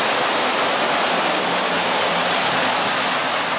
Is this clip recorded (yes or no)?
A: yes